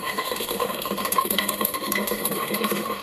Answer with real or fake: fake